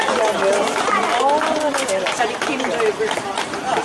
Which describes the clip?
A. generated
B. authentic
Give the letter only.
B